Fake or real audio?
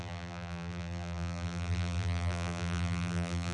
fake